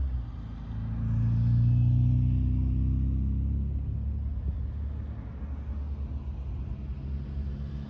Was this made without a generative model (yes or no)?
yes